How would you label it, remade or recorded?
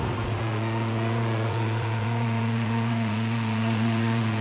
remade